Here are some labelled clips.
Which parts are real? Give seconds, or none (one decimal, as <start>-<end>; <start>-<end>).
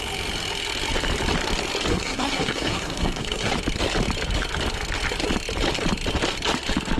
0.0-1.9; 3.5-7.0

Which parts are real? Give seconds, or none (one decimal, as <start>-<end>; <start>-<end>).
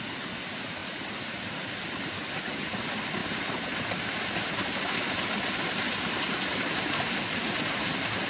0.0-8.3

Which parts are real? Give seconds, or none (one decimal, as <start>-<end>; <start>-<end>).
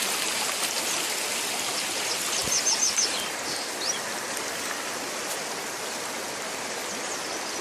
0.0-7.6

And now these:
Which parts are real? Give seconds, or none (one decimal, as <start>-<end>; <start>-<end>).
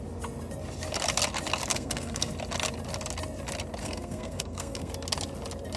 0.0-1.7; 2.3-3.8; 4.9-5.8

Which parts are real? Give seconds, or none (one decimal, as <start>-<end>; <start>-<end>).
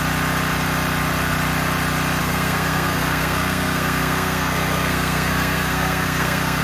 0.0-2.2